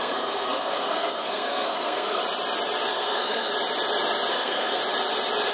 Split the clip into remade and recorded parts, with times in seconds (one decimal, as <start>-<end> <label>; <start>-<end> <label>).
0.0-2.2 remade; 2.2-2.9 recorded; 2.9-3.5 remade; 3.5-4.3 recorded; 4.3-4.8 remade; 4.8-5.5 recorded